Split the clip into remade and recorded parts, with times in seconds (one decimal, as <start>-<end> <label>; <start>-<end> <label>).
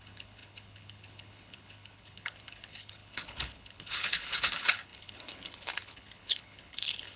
0.0-7.2 remade